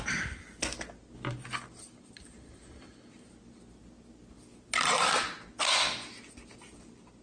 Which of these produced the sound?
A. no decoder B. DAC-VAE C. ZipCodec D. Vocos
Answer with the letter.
A